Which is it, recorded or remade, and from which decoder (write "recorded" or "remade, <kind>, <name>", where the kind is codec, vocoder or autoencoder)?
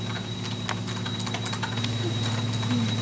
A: recorded